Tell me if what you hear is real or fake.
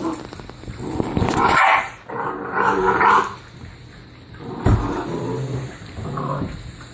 real